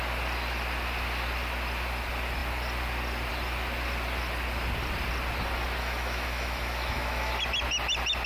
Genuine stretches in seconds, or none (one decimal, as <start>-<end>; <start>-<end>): 0.0-5.8; 7.3-8.3